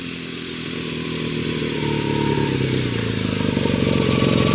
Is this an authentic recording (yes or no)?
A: yes